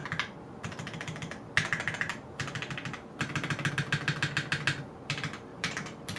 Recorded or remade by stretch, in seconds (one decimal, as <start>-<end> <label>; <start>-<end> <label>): 0.0-5.5 recorded; 5.5-6.2 remade